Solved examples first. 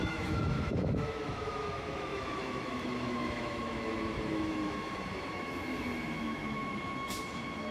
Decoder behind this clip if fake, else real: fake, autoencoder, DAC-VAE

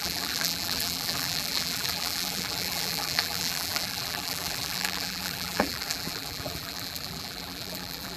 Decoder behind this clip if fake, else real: fake, vocoder, BigVGAN v2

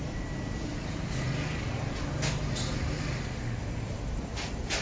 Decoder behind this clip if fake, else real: real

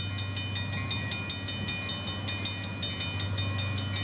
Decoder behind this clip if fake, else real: real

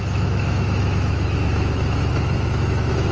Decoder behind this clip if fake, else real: fake, autoencoder, DAC-VAE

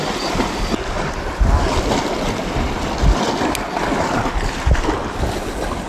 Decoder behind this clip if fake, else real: real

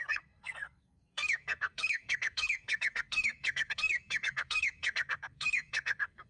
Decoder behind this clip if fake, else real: fake, codec, SNAC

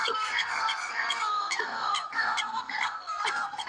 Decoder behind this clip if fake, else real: fake, codec, SNAC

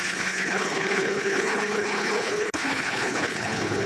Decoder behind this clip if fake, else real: fake, codec, HILCodec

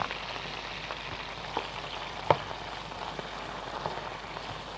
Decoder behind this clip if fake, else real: real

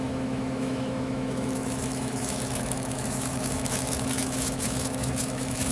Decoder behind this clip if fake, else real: fake, autoencoder, DAC-VAE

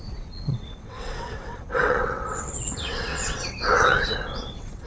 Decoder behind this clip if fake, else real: fake, vocoder, WaveNeXt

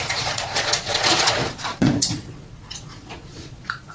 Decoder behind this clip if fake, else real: fake, vocoder, Vocos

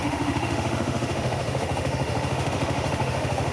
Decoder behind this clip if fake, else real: fake, autoencoder, DAC-VAE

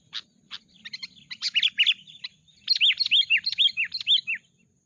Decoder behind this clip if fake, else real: real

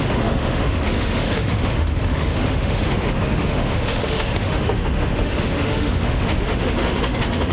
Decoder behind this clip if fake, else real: fake, autoencoder, DAC-VAE